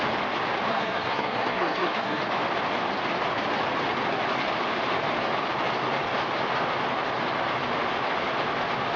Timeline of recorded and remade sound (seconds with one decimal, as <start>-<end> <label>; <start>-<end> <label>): 0.0-0.7 recorded; 0.7-2.2 remade; 2.2-9.0 recorded